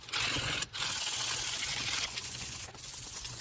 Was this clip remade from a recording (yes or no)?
yes